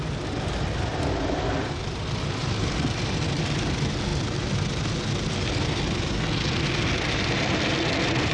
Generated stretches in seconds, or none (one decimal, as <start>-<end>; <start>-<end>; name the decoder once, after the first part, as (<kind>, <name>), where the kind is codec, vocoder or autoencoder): none